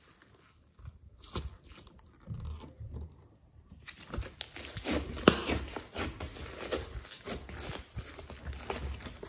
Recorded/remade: recorded